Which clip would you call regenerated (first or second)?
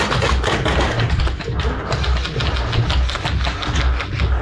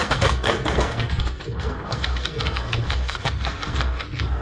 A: second